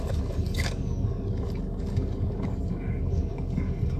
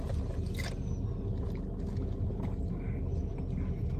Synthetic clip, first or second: first